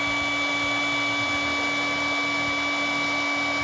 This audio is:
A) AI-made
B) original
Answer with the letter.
B